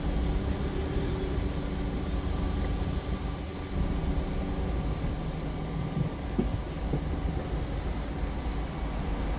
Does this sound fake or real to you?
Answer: real